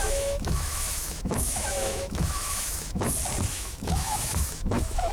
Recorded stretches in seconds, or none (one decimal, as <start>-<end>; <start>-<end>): 3.1-3.5